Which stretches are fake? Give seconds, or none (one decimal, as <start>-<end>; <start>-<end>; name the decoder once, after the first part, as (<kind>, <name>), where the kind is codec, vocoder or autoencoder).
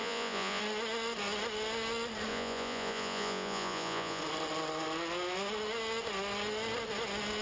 0.0-0.6 (vocoder, Vocos); 2.3-4.2